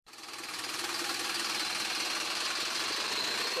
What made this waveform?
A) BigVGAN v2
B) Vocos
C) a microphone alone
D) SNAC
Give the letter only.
C